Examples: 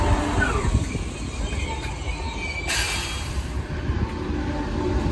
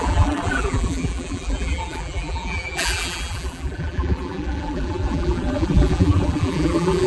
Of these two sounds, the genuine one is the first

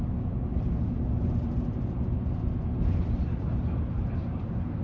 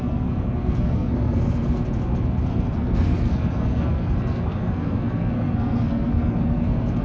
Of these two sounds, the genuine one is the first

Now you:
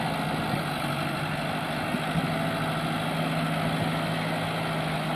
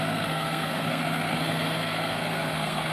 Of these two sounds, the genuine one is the first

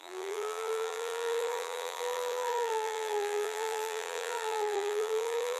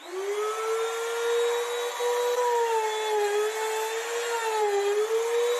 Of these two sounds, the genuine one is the second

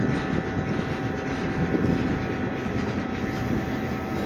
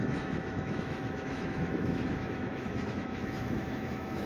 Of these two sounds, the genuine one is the first